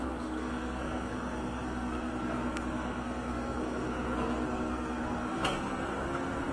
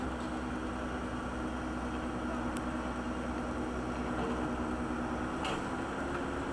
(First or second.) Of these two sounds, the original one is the second